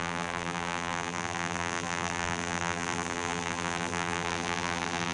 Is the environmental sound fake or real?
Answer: fake